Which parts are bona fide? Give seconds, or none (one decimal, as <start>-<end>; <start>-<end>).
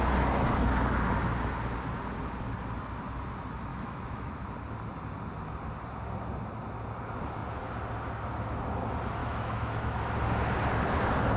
0.0-3.7; 4.3-9.2; 10.0-11.4